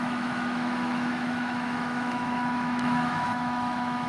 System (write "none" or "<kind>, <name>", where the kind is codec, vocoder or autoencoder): autoencoder, DAC-VAE